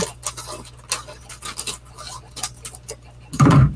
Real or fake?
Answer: real